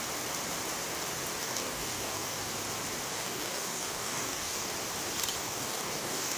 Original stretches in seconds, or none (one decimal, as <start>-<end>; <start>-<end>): 0.0-1.4; 2.5-3.1; 4.7-5.4

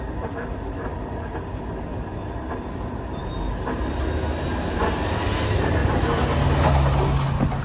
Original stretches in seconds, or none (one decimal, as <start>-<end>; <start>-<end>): 0.0-7.6

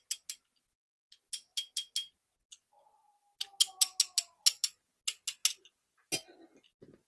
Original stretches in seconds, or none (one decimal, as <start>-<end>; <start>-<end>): 0.0-7.1

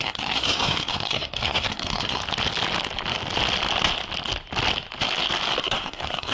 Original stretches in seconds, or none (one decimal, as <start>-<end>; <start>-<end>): 2.2-5.6